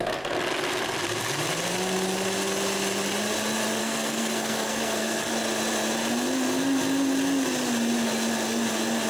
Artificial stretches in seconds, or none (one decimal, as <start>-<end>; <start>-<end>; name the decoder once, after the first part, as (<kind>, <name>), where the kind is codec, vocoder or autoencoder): 3.8-5.3 (codec, SNAC)